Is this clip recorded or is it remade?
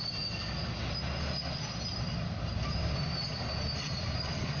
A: recorded